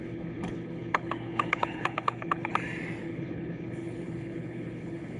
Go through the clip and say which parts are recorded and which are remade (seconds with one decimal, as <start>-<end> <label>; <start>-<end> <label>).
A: 0.0-2.5 remade; 2.5-3.0 recorded; 3.0-5.2 remade